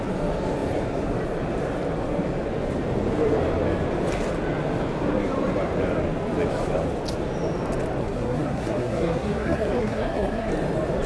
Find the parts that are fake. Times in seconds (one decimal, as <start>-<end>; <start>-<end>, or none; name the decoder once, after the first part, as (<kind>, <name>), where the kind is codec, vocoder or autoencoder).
8.0-10.5 (codec, SNAC)